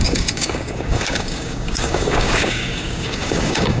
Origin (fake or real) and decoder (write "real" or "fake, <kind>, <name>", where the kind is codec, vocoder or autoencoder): fake, codec, DAC